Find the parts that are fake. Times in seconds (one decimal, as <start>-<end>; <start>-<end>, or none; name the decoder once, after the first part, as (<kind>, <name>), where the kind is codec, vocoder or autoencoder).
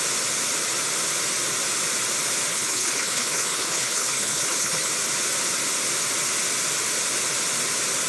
2.5-4.9 (codec, HILCodec)